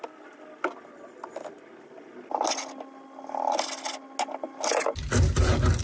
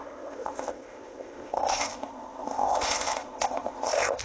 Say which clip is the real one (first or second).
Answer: first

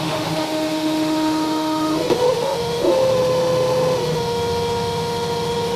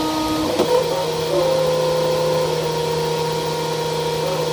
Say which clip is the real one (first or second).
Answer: second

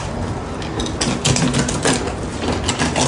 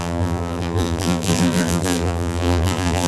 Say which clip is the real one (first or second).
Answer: first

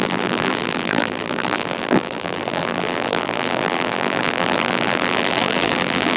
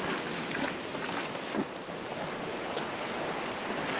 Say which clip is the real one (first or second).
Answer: second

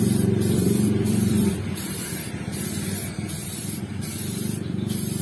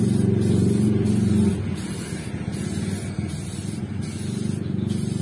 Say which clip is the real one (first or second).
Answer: second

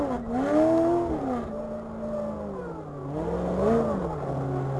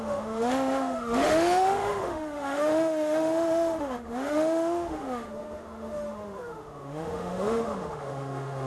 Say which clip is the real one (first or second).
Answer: first